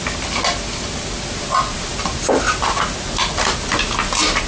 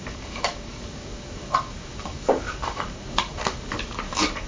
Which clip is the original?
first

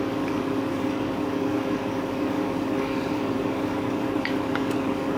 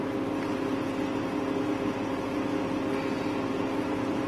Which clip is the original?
second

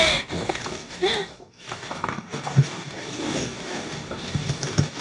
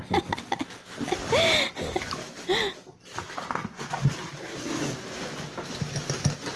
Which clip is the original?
second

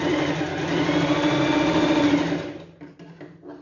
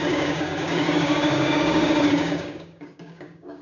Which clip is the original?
first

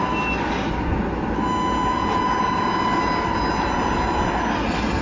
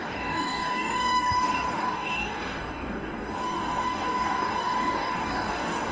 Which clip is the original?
first